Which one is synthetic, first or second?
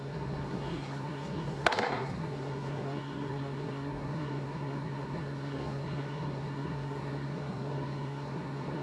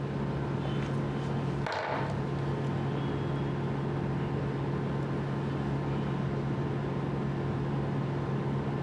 first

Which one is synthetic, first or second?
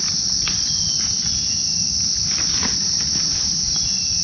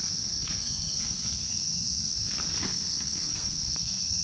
second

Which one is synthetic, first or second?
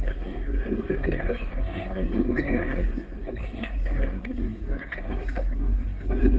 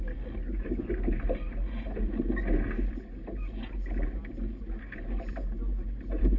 first